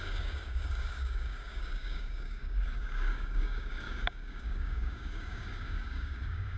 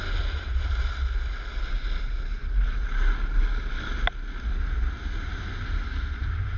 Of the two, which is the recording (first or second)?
second